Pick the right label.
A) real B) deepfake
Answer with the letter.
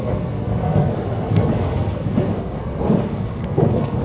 B